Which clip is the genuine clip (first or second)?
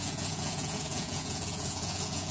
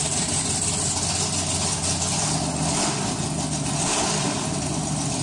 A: second